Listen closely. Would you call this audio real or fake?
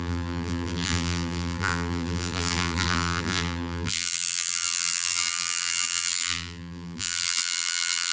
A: fake